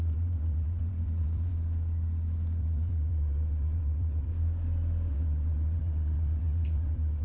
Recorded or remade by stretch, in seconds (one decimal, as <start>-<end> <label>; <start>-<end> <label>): 0.0-1.5 remade; 1.5-2.6 recorded; 2.6-4.3 remade; 4.3-5.1 recorded; 5.1-7.2 remade